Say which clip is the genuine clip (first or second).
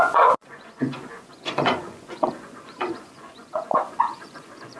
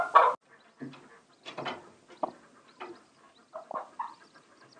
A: second